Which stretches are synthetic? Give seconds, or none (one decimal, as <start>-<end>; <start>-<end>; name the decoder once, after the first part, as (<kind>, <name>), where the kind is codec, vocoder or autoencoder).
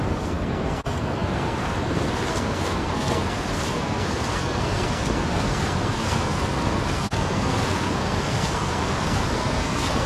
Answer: 0.0-10.1 (codec, SNAC)